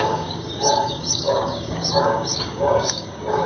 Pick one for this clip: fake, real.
fake